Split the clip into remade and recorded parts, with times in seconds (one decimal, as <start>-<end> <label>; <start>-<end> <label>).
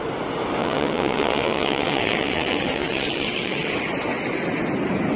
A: 0.0-0.6 recorded; 0.6-3.7 remade; 3.7-5.2 recorded